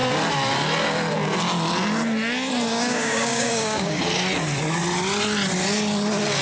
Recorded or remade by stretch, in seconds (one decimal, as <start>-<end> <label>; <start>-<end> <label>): 0.0-2.7 recorded; 2.7-4.0 remade; 4.0-6.4 recorded

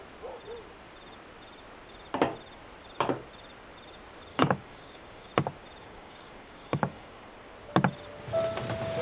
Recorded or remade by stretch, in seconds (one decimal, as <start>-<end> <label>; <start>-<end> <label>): 0.0-4.3 recorded; 4.3-5.3 remade; 5.3-5.8 recorded; 5.8-7.3 remade; 7.3-9.0 recorded